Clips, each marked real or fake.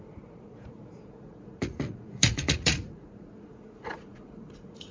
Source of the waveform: fake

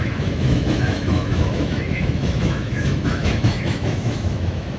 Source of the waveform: fake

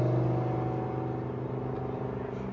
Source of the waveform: real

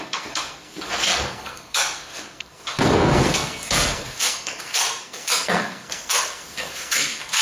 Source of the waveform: fake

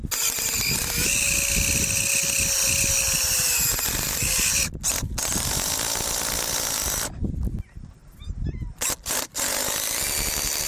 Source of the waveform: real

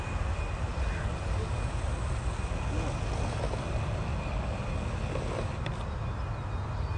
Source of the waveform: real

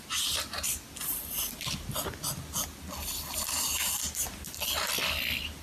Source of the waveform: real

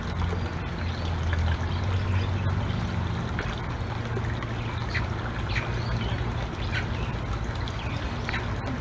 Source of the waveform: real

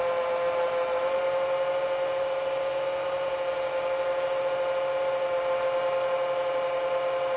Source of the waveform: real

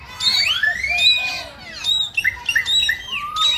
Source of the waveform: real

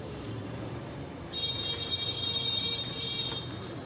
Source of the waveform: fake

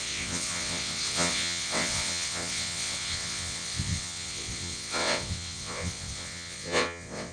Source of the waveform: fake